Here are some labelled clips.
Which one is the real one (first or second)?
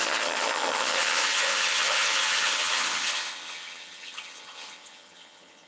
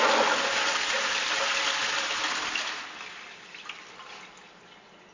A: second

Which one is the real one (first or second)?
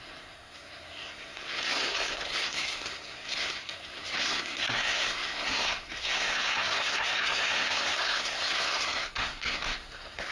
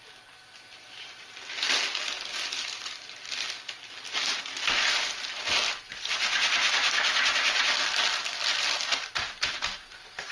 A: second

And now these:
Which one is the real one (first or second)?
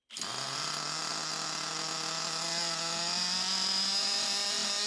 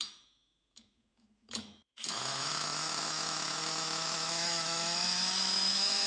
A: first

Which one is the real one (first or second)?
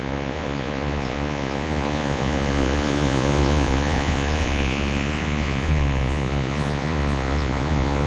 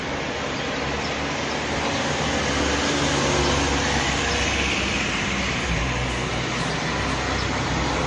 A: second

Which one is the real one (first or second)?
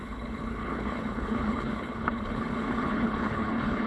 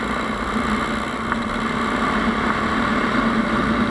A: second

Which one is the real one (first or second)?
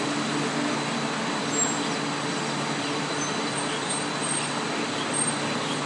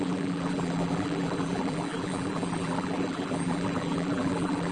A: first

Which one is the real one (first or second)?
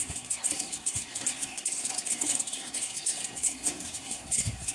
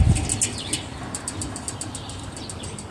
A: second